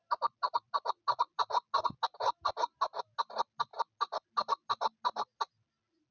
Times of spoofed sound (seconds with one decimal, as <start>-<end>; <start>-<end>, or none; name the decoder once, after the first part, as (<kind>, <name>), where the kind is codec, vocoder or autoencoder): none